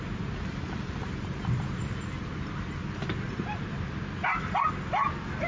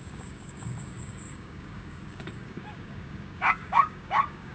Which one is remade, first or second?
second